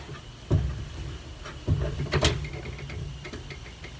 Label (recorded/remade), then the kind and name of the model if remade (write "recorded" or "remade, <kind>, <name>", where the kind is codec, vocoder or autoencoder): recorded